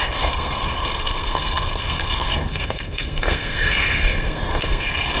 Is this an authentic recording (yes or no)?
no